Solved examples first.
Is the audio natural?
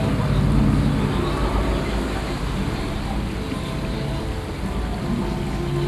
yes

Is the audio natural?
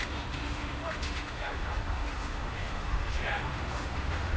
no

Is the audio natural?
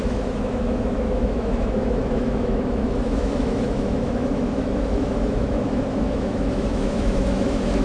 no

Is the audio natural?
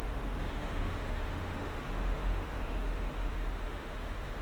no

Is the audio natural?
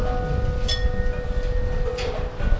yes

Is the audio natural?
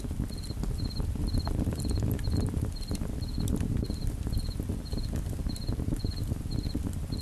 yes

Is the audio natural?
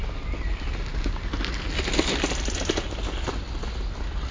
yes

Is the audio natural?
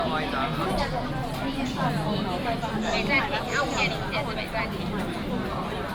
yes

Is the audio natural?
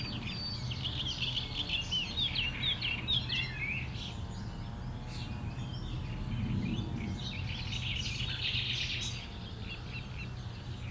yes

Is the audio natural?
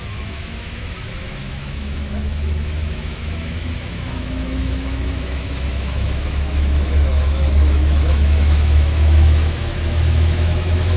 no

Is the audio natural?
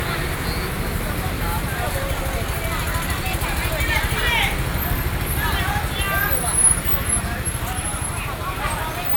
yes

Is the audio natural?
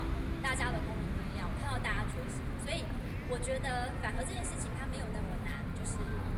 yes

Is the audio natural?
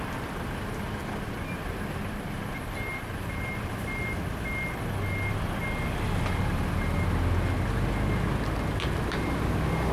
yes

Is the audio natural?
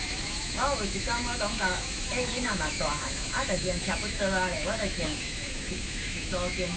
no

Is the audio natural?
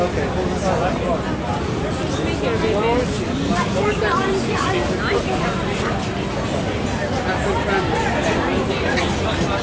yes